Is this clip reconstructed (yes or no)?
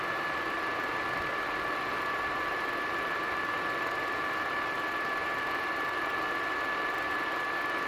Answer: no